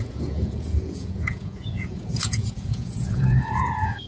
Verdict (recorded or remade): remade